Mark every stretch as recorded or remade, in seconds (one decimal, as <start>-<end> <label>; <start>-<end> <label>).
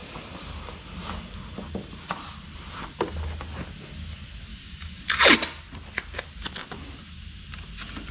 0.0-4.5 recorded; 4.5-5.0 remade; 5.0-8.1 recorded